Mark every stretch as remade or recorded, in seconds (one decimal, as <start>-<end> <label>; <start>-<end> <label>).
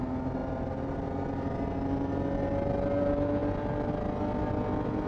0.0-5.1 recorded